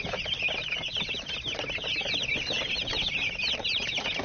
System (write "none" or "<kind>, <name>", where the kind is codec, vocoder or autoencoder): none